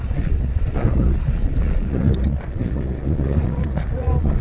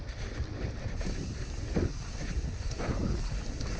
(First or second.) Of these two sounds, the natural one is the second